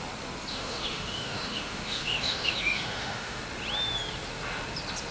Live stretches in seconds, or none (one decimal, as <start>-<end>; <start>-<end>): 0.0-0.5; 3.4-5.1